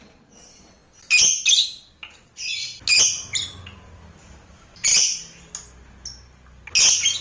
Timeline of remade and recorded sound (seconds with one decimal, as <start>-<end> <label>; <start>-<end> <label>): 0.0-4.2 recorded; 4.2-5.5 remade; 5.5-7.2 recorded